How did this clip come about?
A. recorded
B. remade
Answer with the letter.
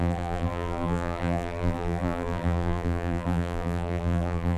B